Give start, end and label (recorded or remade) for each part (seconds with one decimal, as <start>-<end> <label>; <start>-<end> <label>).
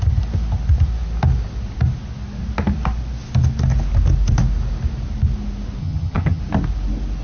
0.0-5.8 recorded; 5.8-6.4 remade; 6.4-7.2 recorded